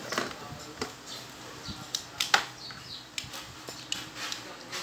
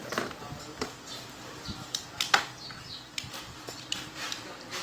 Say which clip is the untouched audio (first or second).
first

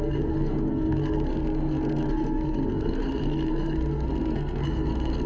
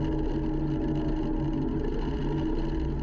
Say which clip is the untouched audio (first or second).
second